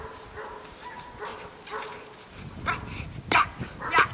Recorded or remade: recorded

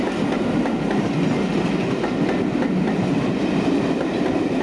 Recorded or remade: recorded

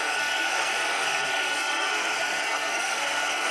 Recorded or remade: remade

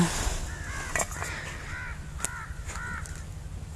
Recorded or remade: recorded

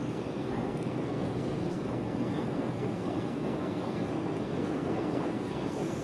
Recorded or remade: remade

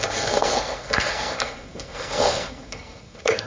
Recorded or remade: remade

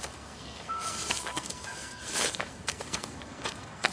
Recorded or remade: remade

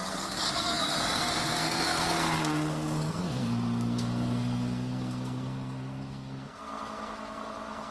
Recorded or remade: remade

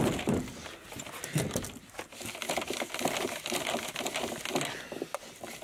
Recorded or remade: recorded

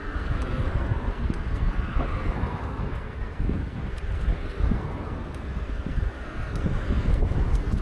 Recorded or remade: remade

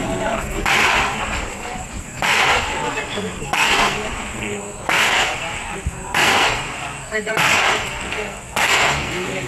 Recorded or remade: remade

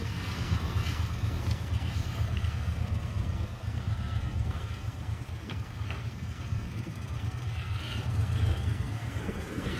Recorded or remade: remade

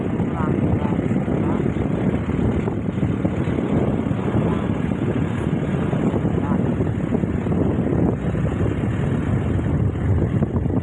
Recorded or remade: recorded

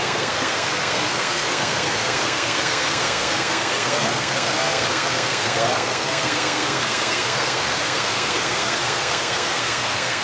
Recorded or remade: remade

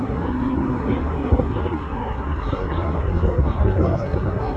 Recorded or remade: remade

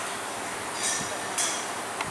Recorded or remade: recorded